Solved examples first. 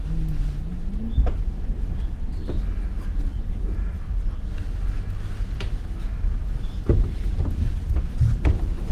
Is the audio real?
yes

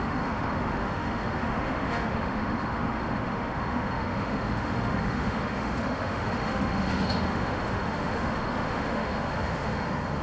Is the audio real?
no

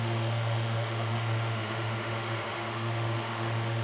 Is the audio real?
no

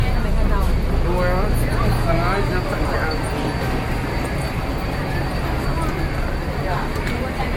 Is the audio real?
yes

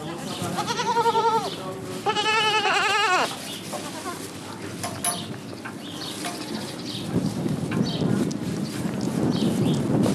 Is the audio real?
yes